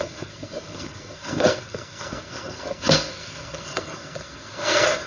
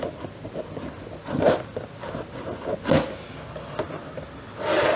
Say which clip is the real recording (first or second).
second